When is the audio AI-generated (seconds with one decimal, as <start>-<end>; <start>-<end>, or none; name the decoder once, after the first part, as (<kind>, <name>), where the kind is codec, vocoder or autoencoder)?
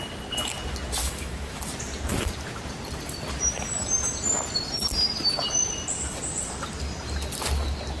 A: 1.0-1.6 (autoencoder, DAC-VAE)